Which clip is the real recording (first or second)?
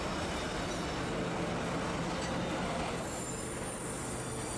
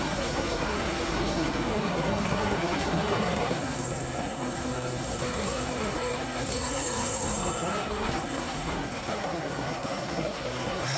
first